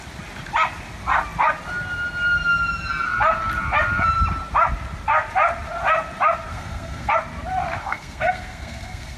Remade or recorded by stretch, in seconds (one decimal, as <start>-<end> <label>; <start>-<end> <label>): 0.0-6.5 recorded; 6.5-7.1 remade; 7.1-7.8 recorded; 7.8-9.2 remade